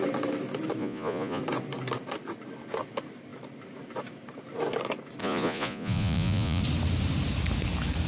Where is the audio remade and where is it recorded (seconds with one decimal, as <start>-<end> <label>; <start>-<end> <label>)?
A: 0.0-0.8 recorded; 0.8-1.4 remade; 1.4-5.2 recorded; 5.2-6.6 remade; 6.6-8.1 recorded